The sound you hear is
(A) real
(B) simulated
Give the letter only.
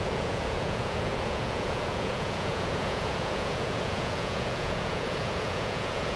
B